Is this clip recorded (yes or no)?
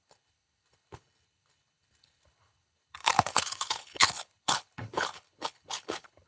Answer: no